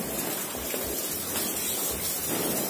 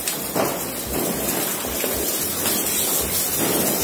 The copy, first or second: first